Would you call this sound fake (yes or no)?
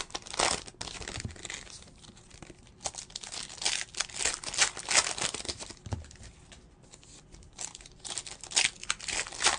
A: no